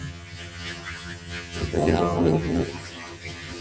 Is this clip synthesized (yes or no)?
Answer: yes